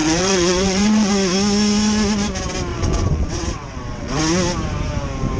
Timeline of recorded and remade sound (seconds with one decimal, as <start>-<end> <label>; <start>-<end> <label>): 0.0-1.1 remade; 1.1-2.7 recorded; 2.7-4.2 remade; 4.2-5.4 recorded